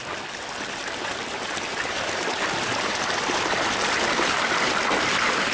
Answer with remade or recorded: recorded